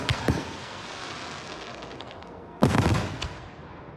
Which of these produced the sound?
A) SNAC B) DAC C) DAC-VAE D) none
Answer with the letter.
A